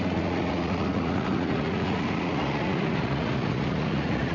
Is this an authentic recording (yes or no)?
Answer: no